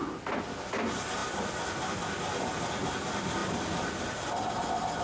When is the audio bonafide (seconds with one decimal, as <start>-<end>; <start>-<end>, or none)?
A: 0.0-5.0